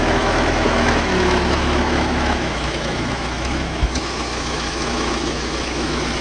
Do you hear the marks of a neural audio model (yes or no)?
yes